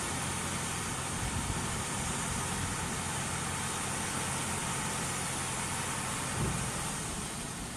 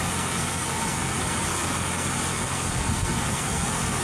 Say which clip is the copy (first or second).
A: second